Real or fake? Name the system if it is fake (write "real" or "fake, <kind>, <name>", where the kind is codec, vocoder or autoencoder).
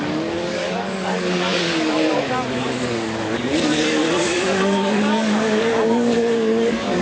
fake, codec, DAC